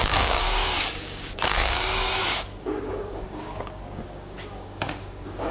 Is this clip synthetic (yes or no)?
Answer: yes